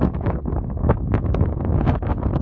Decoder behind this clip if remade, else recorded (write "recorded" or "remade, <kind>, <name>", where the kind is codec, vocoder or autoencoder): remade, codec, SNAC